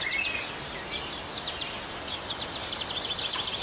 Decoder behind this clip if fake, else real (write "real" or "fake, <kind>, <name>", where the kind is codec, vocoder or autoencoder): real